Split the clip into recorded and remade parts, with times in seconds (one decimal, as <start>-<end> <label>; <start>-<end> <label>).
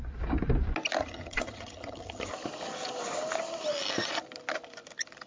0.0-1.0 recorded; 1.0-2.3 remade; 2.3-5.3 recorded